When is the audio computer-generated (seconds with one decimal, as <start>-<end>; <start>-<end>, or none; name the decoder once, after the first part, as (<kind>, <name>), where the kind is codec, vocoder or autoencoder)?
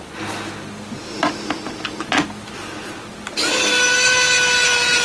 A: none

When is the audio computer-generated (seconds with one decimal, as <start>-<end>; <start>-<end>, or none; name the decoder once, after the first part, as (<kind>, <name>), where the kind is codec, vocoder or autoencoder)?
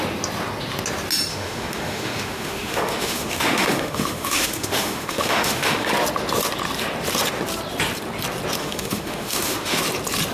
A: 1.3-5.9 (autoencoder, DAC-VAE); 8.6-9.8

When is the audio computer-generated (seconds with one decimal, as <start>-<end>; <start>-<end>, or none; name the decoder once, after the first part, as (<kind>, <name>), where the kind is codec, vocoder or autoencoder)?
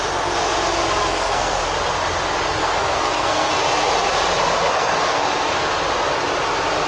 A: 1.1-1.6 (codec, SNAC); 2.6-3.5; 4.7-5.7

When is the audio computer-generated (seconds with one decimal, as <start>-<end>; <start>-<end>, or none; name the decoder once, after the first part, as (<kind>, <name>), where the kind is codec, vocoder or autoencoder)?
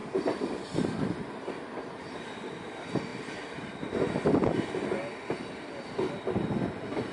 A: 0.0-2.3 (vocoder, BigVGAN v2); 3.1-3.8